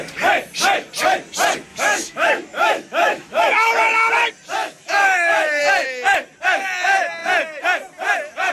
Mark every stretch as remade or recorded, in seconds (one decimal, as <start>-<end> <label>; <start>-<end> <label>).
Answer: 0.0-1.7 recorded; 1.7-4.1 remade; 4.1-4.6 recorded; 4.6-5.6 remade; 5.6-8.5 recorded